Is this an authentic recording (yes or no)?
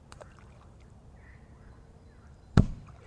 no